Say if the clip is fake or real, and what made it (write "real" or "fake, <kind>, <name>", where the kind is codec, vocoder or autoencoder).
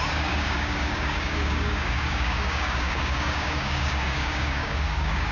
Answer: fake, codec, DAC